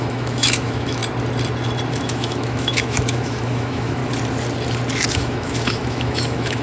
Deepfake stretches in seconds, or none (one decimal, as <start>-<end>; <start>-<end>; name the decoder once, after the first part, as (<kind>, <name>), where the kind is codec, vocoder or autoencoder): 0.0-1.0 (autoencoder, DAC-VAE); 1.9-4.0; 5.1-6.6